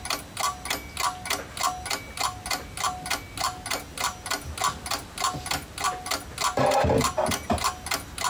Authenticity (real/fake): real